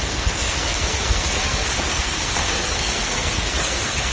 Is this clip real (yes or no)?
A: no